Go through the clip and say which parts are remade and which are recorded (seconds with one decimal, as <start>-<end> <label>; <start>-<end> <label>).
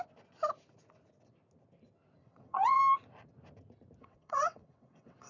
0.0-2.2 recorded; 2.2-2.8 remade; 2.8-4.0 recorded; 4.0-5.3 remade